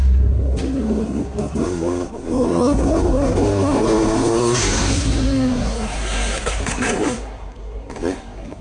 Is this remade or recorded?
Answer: remade